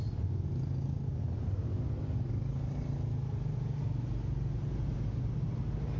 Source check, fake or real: real